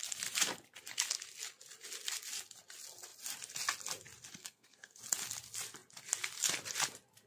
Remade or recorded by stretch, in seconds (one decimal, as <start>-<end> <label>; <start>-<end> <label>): 0.0-4.4 recorded; 4.4-5.0 remade; 5.0-7.3 recorded

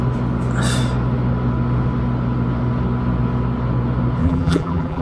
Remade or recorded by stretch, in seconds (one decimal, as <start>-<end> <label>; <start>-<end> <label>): 0.0-4.2 recorded; 4.2-5.0 remade

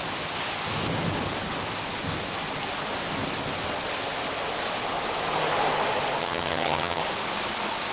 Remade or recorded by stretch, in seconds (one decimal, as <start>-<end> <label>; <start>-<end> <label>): 0.0-6.2 recorded; 6.2-7.0 remade; 7.0-7.9 recorded